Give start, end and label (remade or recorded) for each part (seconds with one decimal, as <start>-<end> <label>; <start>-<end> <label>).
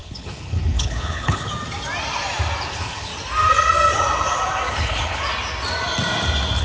0.0-1.5 remade; 1.5-2.7 recorded; 2.7-3.1 remade; 3.1-4.7 recorded; 4.7-5.2 remade; 5.2-6.6 recorded